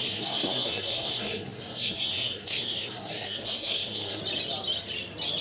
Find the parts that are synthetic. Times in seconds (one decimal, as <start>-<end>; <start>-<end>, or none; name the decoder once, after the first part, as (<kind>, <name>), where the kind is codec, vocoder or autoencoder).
0.0-4.2 (codec, SNAC)